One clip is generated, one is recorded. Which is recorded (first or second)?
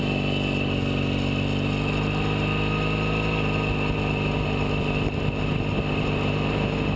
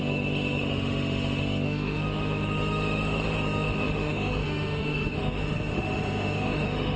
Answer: first